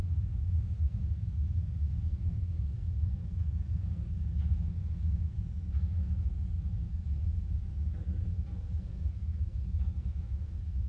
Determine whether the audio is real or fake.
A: fake